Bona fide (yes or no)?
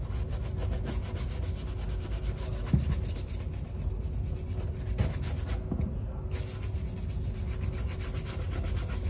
yes